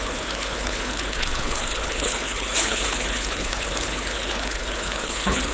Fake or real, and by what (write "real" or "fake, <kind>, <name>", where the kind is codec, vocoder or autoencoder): fake, codec, HILCodec